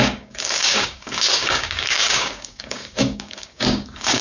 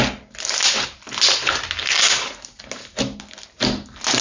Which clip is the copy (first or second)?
first